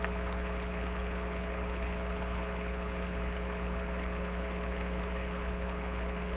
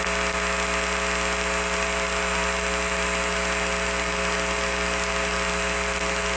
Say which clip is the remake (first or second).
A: first